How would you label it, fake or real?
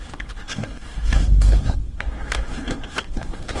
fake